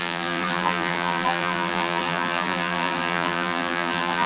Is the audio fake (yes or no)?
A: yes